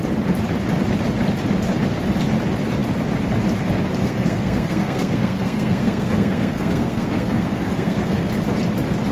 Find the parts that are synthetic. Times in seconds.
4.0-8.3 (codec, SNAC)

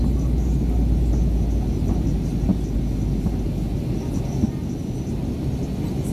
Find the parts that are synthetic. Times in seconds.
none

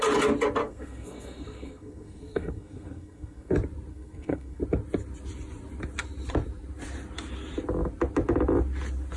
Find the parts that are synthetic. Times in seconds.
0.6-3.5 (codec, SNAC); 3.9-4.6

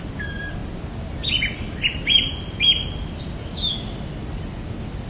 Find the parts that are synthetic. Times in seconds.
none

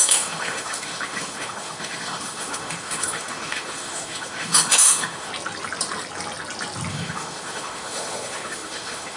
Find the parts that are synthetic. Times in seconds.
0.0-5.3 (autoencoder, DAC-VAE); 6.9-9.2

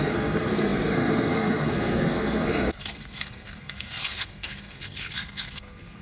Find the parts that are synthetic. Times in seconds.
0.0-6.0 (codec, SNAC)

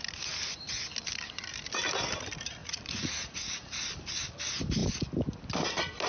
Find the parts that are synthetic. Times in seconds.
2.6-3.8 (vocoder, Vocos)